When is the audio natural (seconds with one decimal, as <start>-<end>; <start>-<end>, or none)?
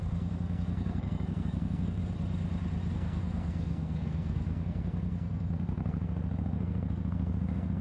2.0-2.9